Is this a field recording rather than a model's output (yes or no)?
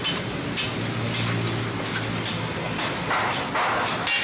yes